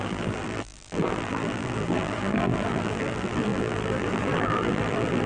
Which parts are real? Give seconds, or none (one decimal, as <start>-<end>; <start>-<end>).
none